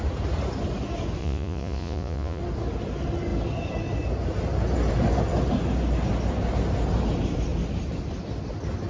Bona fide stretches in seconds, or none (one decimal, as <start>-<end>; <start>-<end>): 0.0-1.2; 2.4-8.9